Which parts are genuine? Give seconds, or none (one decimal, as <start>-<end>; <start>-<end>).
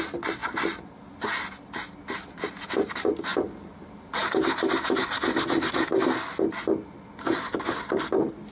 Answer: 0.0-8.5